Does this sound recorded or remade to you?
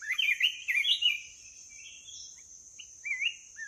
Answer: recorded